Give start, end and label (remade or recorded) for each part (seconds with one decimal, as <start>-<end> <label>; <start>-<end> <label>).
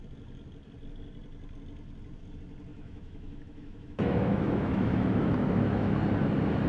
0.0-2.7 recorded; 2.7-6.0 remade; 6.0-6.7 recorded